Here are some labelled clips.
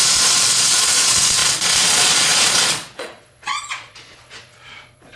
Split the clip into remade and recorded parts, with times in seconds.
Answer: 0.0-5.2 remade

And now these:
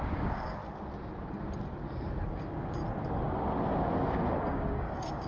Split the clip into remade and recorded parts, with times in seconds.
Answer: 0.0-0.6 remade; 0.6-2.3 recorded; 2.3-2.8 remade; 2.8-4.1 recorded; 4.1-5.3 remade

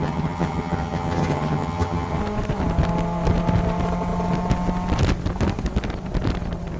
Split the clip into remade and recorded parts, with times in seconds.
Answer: 0.0-2.2 remade; 2.2-6.8 recorded

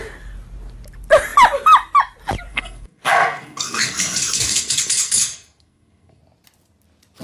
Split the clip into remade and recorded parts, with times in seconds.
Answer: 0.0-2.5 recorded; 2.5-6.2 remade; 6.2-7.2 recorded

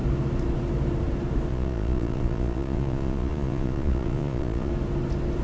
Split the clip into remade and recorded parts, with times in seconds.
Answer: 0.0-1.5 recorded; 1.5-4.7 remade; 4.7-5.4 recorded

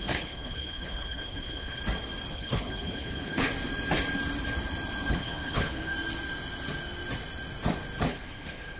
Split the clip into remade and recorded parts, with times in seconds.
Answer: 0.0-1.8 remade; 1.8-2.3 recorded; 2.3-3.5 remade; 3.5-5.1 recorded; 5.1-5.9 remade; 5.9-8.1 recorded; 8.1-8.8 remade

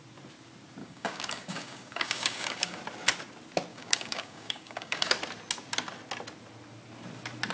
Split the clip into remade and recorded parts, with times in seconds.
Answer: 0.0-0.8 recorded; 0.8-2.8 remade; 2.8-3.7 recorded; 3.7-5.1 remade; 5.1-7.5 recorded

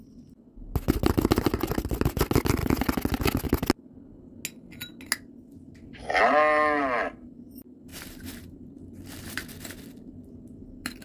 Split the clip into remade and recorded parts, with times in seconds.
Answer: 0.0-7.9 recorded; 7.9-8.7 remade; 8.7-11.0 recorded